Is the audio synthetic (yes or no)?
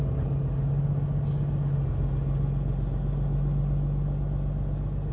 no